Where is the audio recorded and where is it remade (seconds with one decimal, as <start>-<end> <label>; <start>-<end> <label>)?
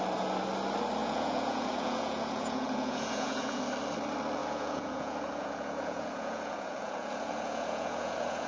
0.0-1.0 recorded; 1.0-3.6 remade; 3.6-4.4 recorded; 4.4-8.5 remade